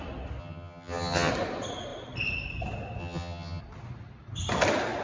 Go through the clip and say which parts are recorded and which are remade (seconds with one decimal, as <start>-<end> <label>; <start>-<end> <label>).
0.0-0.4 recorded; 0.4-1.3 remade; 1.3-3.0 recorded; 3.0-3.6 remade; 3.6-5.0 recorded